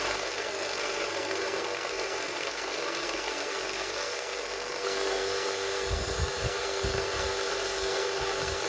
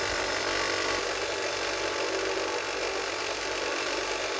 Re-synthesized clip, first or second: first